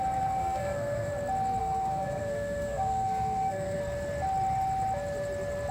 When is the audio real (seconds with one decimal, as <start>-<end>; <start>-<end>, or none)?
0.0-0.4; 1.1-1.6; 3.8-5.7